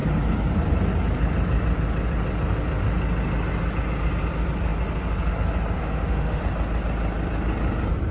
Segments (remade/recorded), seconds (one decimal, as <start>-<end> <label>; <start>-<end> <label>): 0.0-5.8 recorded; 5.8-6.4 remade; 6.4-8.1 recorded